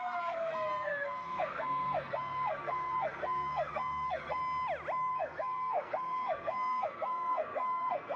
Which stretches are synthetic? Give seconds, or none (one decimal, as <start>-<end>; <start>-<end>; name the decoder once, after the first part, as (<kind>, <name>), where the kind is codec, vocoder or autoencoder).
0.0-4.4 (codec, SNAC); 5.1-8.2